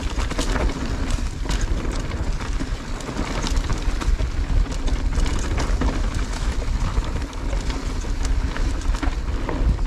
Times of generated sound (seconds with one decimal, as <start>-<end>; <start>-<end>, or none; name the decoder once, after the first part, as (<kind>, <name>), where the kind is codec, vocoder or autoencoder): 5.3-7.3 (vocoder, BigVGAN v2)